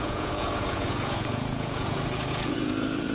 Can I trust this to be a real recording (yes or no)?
no